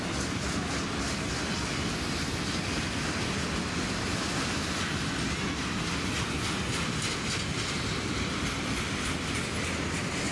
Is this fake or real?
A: real